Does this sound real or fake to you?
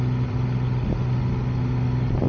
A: real